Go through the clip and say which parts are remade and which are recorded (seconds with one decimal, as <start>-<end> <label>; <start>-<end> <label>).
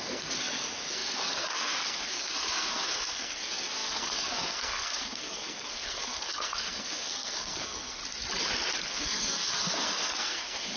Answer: 0.0-8.0 remade; 8.0-8.9 recorded; 8.9-10.8 remade